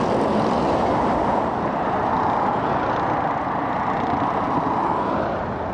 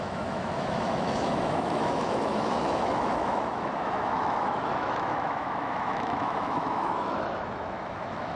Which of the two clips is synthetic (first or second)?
second